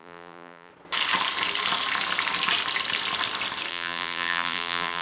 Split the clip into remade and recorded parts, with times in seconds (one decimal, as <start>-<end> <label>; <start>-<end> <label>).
0.0-0.7 remade; 0.7-3.7 recorded; 3.7-5.0 remade